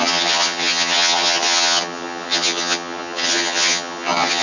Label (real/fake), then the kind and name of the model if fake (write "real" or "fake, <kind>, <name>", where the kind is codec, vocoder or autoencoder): fake, vocoder, HiFi-GAN